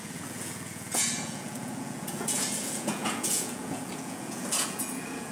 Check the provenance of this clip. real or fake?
fake